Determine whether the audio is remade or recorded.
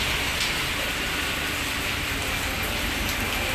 recorded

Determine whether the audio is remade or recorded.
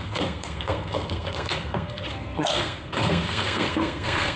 remade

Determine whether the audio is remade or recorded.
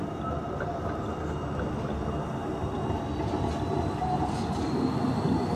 recorded